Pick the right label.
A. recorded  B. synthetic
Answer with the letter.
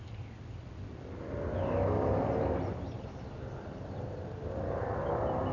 B